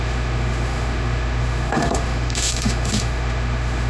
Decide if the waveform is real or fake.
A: fake